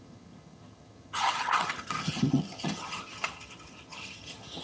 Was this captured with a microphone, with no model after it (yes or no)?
no